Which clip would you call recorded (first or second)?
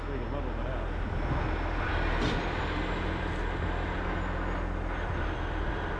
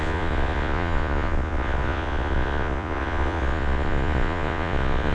first